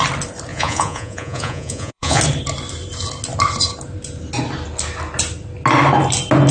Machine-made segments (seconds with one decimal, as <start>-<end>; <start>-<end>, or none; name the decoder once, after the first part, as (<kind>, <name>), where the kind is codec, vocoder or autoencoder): 0.5-2.2 (vocoder, Vocos)